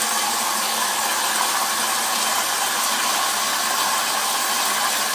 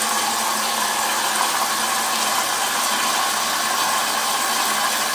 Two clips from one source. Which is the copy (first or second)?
first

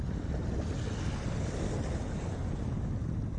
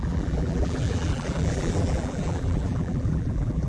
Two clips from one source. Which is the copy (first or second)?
second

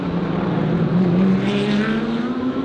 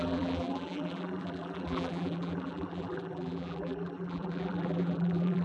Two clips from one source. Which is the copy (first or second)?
second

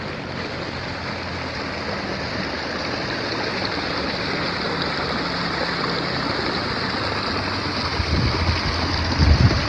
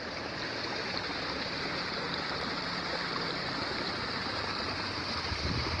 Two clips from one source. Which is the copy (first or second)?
second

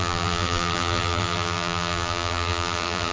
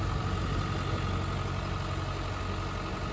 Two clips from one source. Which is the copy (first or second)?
first